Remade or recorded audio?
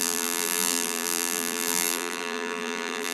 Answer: remade